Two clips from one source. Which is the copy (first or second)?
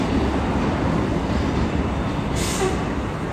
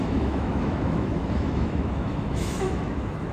second